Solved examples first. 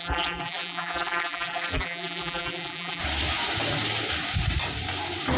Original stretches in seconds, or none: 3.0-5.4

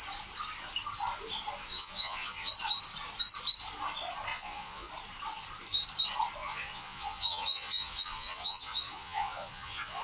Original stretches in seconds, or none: 0.0-1.7; 2.5-4.3; 4.9-6.4

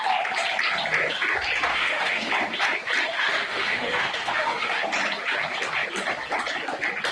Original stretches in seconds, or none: 0.0-1.7; 2.3-3.1; 4.8-7.1

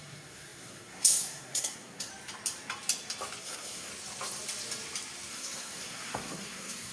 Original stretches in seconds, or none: 2.1-3.4; 3.9-5.3